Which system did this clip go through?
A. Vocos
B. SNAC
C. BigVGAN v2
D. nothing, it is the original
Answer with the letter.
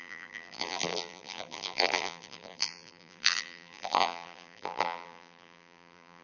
C